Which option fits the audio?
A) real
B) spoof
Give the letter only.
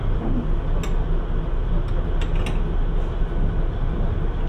A